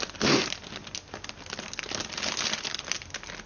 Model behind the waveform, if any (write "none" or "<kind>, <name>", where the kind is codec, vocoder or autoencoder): none